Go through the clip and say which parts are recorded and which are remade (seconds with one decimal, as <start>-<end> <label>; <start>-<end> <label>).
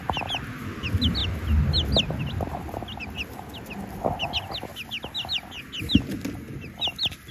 0.0-7.3 recorded